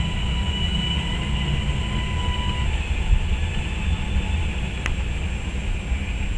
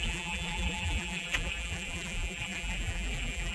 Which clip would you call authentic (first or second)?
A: first